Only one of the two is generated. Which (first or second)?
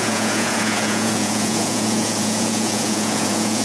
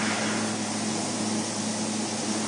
first